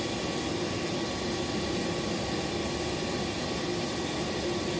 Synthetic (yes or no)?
no